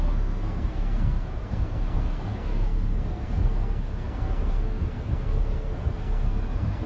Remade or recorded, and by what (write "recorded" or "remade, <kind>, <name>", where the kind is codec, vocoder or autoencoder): remade, codec, SNAC